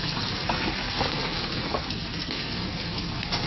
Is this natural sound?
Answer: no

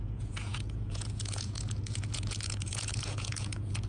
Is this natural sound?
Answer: no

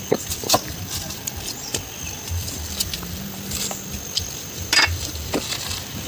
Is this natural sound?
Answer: no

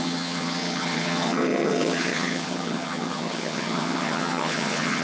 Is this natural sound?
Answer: no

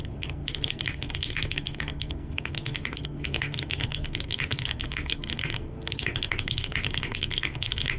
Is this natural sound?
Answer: no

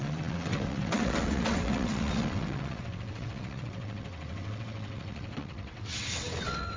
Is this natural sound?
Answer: no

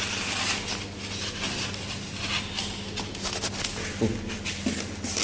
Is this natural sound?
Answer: yes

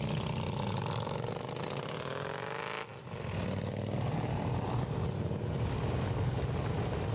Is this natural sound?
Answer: yes